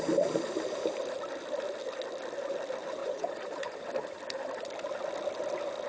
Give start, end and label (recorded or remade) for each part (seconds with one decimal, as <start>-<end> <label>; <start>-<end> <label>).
0.0-3.0 recorded; 3.0-3.8 remade; 3.8-5.9 recorded